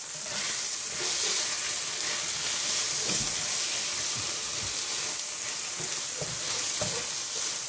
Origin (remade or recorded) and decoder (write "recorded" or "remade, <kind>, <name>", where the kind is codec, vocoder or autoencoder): recorded